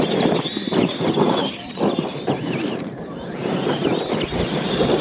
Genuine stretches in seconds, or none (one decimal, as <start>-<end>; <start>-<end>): 0.0-2.1